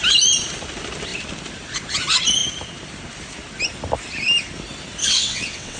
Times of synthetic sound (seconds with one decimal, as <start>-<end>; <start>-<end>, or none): 5.0-5.8